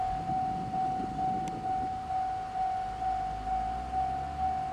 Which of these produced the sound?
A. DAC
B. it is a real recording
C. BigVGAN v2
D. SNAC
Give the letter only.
B